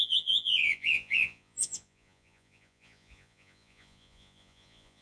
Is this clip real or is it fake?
fake